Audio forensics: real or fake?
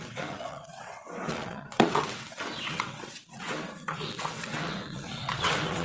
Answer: fake